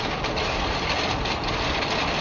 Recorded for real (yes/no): yes